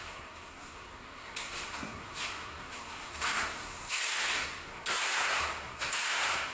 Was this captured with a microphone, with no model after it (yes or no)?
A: no